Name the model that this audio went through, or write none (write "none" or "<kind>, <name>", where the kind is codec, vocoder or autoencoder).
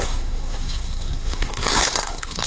codec, SNAC